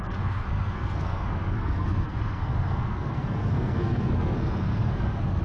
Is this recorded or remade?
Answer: remade